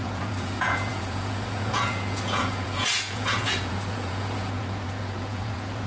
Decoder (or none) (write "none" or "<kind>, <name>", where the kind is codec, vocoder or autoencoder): vocoder, Vocos